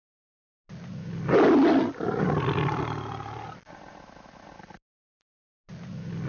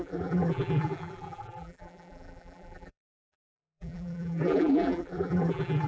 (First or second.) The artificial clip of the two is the second